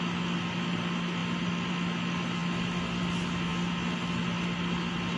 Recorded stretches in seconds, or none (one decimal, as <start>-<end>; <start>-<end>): 0.0-5.2